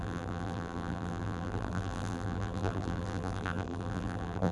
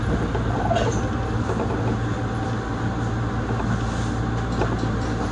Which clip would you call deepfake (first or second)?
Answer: first